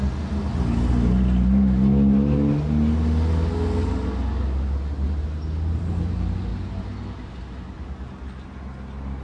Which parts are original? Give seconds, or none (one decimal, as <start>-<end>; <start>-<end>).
0.0-9.2